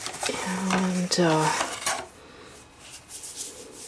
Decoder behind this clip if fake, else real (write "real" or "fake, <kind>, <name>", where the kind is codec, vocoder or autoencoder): real